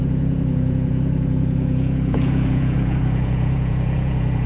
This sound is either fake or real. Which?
fake